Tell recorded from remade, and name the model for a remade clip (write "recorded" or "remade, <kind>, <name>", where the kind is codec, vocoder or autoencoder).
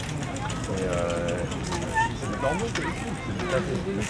recorded